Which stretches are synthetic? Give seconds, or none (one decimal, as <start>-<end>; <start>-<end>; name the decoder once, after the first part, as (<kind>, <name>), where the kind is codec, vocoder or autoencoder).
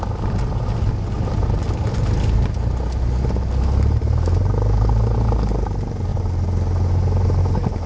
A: none